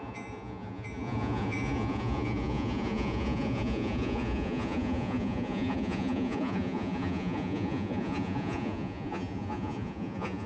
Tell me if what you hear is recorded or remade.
remade